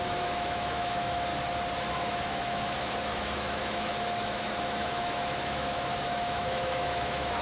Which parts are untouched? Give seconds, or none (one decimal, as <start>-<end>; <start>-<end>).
1.3-1.9